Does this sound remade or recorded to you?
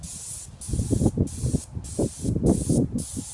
recorded